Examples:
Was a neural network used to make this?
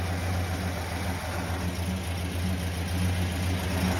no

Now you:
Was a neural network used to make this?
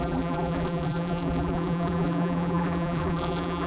yes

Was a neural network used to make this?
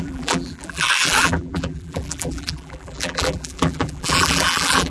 yes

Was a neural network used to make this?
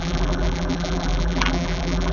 yes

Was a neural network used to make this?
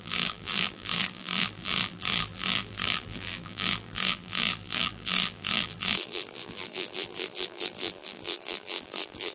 yes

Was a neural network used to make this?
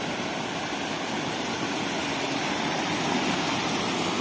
no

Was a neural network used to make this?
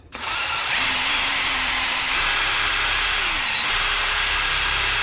yes